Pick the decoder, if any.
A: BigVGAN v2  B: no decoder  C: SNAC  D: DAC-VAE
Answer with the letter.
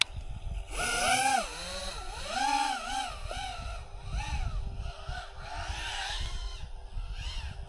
B